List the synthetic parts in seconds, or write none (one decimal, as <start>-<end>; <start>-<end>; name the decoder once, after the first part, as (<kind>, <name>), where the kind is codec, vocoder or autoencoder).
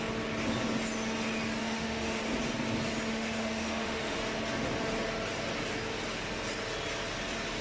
1.6-2.2 (autoencoder, DAC-VAE); 3.1-4.2